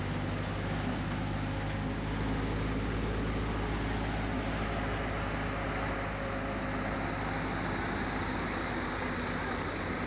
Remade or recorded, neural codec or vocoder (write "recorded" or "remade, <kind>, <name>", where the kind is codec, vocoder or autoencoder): recorded